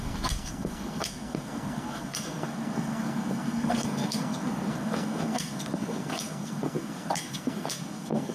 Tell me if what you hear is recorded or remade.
remade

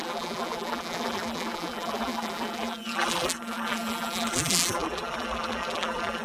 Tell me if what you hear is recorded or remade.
remade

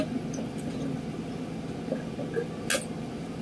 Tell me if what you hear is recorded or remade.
recorded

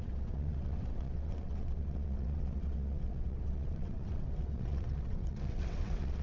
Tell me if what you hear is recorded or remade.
remade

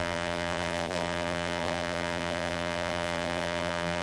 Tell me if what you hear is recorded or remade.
remade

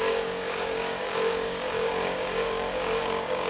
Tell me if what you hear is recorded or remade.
remade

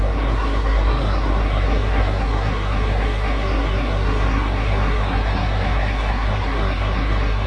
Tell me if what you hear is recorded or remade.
remade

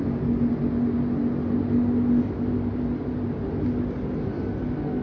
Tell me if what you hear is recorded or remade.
recorded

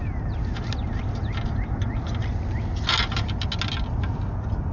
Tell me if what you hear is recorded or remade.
recorded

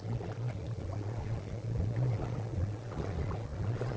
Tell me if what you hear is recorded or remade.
remade